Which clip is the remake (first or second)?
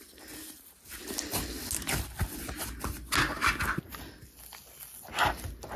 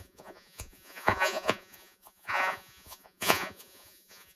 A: second